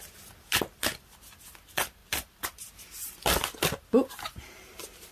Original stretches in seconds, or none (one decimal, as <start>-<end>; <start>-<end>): 0.0-5.1